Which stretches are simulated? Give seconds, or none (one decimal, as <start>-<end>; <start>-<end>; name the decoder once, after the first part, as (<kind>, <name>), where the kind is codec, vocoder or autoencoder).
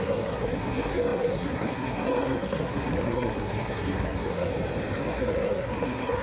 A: 0.0-4.5 (codec, SNAC); 5.0-6.2